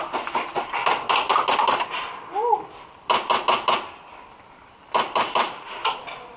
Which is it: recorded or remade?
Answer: recorded